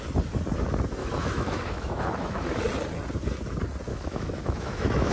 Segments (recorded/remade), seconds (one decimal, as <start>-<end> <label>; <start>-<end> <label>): 0.0-1.0 recorded; 1.0-2.6 remade; 2.6-3.9 recorded; 3.9-5.1 remade